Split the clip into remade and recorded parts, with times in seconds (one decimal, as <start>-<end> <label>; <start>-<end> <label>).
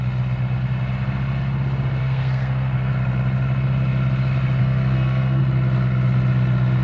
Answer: 0.0-2.0 recorded; 2.0-2.9 remade; 2.9-4.6 recorded; 4.6-5.4 remade; 5.4-6.8 recorded